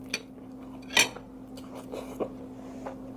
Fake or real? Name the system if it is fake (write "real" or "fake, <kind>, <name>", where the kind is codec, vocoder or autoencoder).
real